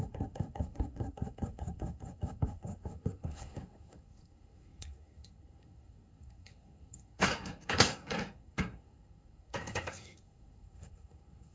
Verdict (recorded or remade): remade